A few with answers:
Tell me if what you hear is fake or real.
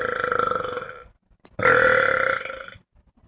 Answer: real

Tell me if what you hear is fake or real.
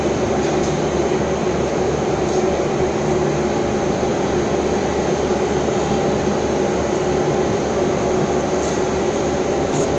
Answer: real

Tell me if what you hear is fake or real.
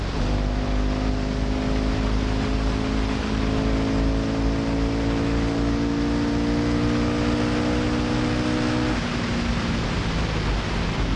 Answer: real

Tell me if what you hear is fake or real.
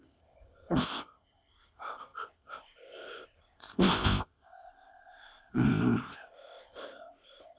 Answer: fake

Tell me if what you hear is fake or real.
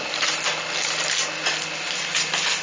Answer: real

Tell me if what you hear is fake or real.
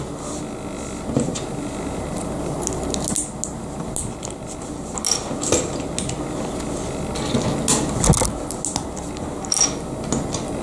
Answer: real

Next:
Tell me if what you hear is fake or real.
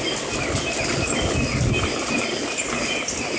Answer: real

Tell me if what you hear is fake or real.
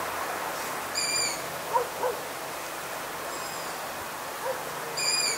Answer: real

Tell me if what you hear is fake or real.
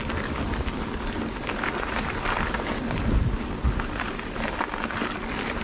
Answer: real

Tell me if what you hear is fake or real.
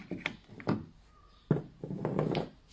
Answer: real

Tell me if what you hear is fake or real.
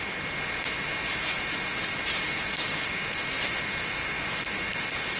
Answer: real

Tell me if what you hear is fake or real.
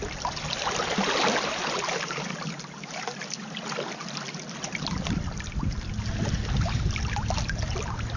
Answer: real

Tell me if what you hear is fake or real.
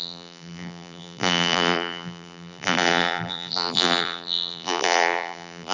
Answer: fake